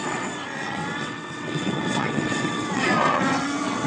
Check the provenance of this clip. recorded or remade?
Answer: remade